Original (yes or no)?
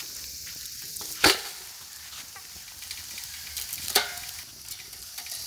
yes